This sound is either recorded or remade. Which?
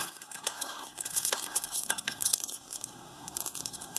remade